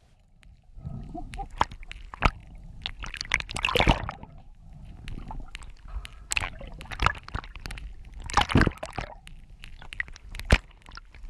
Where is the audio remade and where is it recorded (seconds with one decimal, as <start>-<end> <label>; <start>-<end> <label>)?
0.0-11.3 recorded